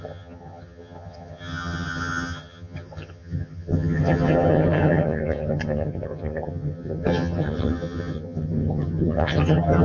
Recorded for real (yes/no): no